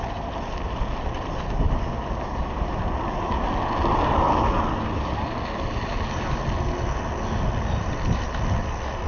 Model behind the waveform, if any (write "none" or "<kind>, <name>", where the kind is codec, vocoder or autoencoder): none